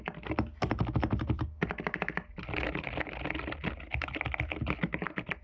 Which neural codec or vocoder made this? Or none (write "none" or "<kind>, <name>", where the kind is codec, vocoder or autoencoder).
none